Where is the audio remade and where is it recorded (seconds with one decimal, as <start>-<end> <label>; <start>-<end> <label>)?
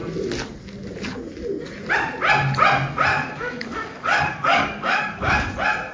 0.0-3.1 recorded; 3.1-5.5 remade; 5.5-5.9 recorded